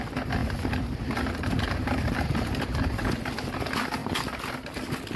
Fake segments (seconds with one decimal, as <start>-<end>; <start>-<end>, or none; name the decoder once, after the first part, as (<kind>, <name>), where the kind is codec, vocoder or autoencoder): 0.4-3.3 (vocoder, BigVGAN v2)